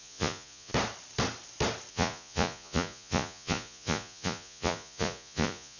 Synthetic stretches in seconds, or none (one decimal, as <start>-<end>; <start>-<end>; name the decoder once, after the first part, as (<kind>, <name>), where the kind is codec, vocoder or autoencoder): 0.0-0.7 (vocoder, Vocos); 1.9-5.8